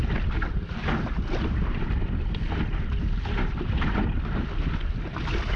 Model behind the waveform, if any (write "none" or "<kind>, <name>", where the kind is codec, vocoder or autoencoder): none